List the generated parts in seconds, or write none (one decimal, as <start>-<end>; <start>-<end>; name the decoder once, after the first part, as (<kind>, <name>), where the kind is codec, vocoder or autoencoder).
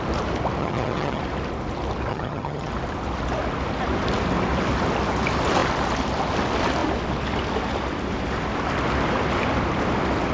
0.6-1.2 (vocoder, HiFi-GAN); 2.1-2.7